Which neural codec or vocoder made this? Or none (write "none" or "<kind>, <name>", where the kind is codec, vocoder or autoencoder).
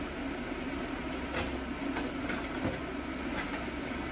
none